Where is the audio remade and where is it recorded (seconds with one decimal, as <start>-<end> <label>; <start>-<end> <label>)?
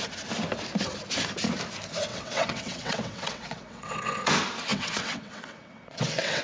0.0-2.1 recorded; 2.1-4.3 remade; 4.3-4.7 recorded; 4.7-6.4 remade